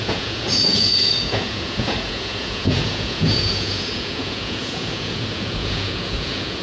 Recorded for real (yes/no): no